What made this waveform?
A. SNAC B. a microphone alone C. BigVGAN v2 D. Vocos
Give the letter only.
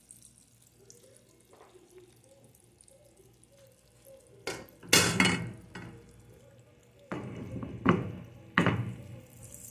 B